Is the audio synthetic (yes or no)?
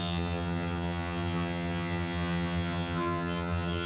yes